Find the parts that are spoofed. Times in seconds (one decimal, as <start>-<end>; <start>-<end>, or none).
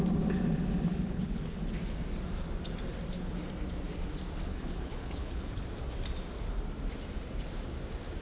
0.9-1.6; 4.5-5.6